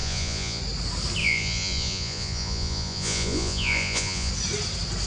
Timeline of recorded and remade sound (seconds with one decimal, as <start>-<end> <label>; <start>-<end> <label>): 0.0-0.6 remade; 0.6-1.2 recorded; 1.2-4.3 remade; 4.3-5.1 recorded